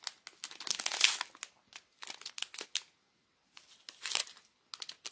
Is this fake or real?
real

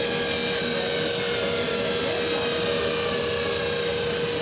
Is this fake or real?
real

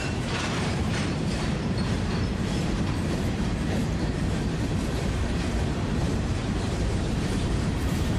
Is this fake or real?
fake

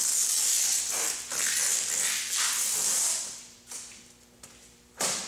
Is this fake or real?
real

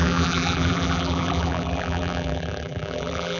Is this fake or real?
fake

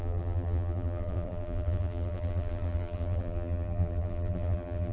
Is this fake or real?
fake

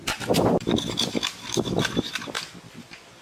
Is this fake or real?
fake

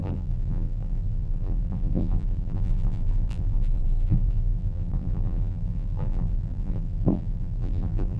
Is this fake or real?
fake